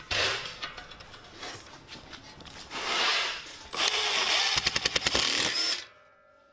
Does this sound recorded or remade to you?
recorded